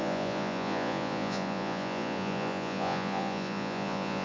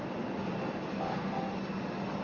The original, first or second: second